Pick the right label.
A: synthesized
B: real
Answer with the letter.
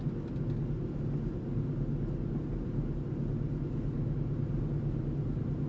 B